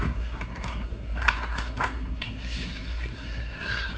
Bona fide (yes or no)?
no